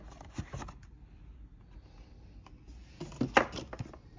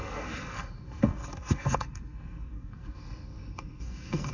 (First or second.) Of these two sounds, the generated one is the second